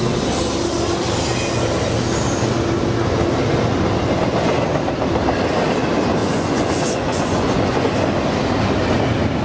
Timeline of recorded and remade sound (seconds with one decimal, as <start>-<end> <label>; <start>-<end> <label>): 0.0-6.2 recorded; 6.2-7.9 remade; 7.9-9.4 recorded